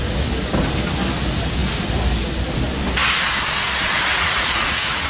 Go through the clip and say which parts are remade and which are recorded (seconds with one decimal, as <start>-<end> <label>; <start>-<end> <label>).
0.0-4.1 recorded; 4.1-5.1 remade